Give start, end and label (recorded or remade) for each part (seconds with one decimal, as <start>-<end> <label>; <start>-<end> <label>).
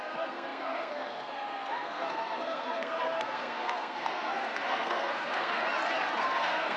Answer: 0.0-5.6 remade; 5.6-6.2 recorded; 6.2-6.8 remade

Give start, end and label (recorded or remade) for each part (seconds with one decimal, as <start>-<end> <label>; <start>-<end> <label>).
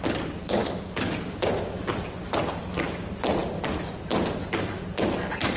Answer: 0.0-5.6 recorded